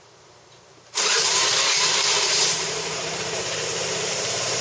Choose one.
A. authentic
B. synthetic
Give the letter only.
B